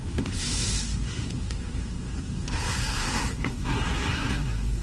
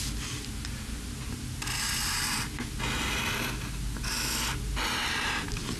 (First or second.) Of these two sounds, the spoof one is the first